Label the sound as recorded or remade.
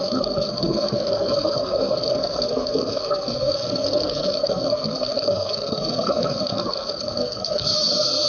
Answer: remade